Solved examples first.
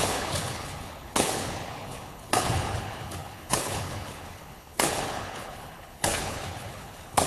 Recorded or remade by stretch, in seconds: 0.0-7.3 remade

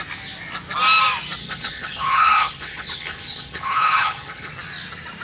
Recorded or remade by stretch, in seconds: 0.0-1.4 recorded; 1.4-4.5 remade; 4.5-5.2 recorded

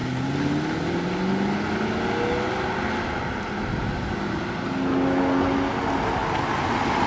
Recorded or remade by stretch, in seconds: 0.0-7.1 recorded

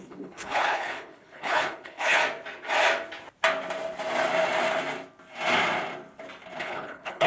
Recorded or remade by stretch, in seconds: 0.0-2.2 remade; 2.2-6.6 recorded; 6.6-7.3 remade